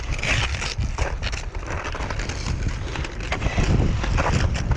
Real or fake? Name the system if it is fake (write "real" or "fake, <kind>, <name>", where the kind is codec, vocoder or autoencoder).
real